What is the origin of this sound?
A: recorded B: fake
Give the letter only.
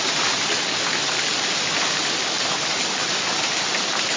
A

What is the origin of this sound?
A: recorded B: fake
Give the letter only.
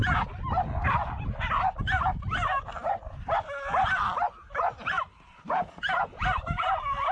A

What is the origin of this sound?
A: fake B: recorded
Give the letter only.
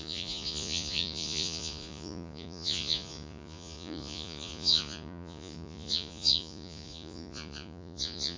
A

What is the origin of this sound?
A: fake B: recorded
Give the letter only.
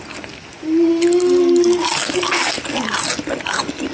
B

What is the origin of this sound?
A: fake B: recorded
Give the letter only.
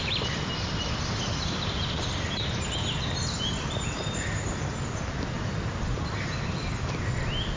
B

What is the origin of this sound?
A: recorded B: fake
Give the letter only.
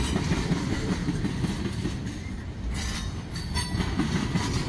A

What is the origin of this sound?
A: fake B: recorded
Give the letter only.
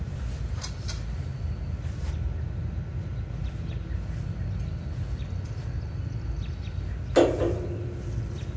B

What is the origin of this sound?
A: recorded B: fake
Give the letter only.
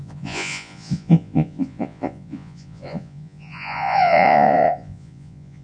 B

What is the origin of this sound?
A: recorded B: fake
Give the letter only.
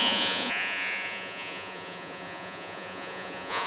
B